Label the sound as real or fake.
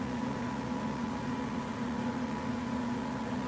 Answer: fake